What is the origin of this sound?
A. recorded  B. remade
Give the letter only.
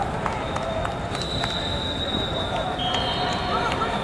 A